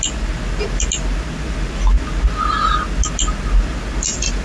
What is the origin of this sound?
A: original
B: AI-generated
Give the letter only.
A